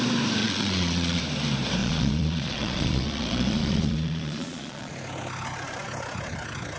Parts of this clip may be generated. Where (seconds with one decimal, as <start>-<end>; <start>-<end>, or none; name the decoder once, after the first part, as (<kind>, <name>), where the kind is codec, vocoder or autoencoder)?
0.4-1.2 (vocoder, Vocos); 1.8-4.9